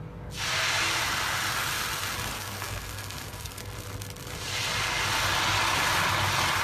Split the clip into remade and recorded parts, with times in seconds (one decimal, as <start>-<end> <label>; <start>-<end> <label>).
0.0-2.3 recorded; 2.3-3.6 remade; 3.6-6.6 recorded